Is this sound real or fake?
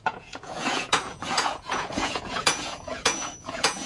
fake